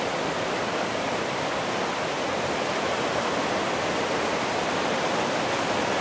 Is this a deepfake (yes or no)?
no